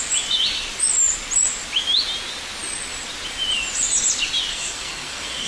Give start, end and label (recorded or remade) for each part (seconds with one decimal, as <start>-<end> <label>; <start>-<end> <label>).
0.0-4.5 recorded; 4.5-5.5 remade